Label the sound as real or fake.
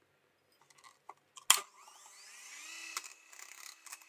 real